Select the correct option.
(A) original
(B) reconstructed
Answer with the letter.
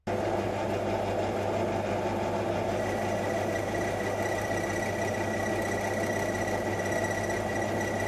A